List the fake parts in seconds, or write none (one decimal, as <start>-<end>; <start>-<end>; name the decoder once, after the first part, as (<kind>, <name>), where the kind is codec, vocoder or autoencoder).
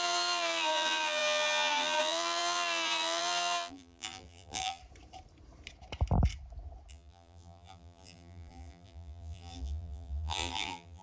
0.0-4.8 (vocoder, BigVGAN v2); 6.9-11.0